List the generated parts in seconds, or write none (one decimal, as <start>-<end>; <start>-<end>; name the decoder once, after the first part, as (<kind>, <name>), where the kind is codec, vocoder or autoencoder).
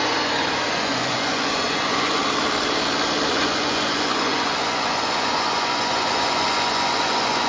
0.0-2.2 (vocoder, Vocos); 3.3-7.5